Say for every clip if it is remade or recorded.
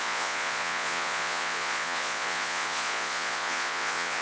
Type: remade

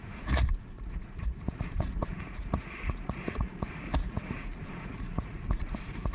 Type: remade